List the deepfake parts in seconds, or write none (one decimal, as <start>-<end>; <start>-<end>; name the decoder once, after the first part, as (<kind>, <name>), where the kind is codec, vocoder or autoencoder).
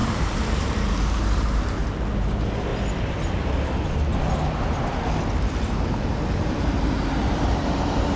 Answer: 0.0-1.8 (vocoder, BigVGAN v2); 2.3-2.7; 5.9-8.2